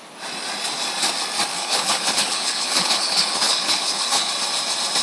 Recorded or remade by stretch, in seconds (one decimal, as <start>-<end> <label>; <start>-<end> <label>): 0.0-1.5 recorded; 1.5-4.3 remade; 4.3-5.0 recorded